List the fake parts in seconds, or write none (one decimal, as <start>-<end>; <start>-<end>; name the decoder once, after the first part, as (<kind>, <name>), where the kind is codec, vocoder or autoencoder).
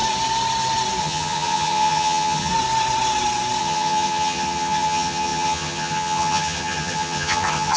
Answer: 1.0-2.5 (vocoder, HiFi-GAN); 3.6-7.8